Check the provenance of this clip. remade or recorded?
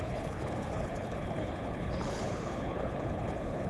remade